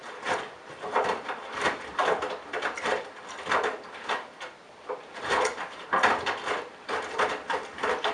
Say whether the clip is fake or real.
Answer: real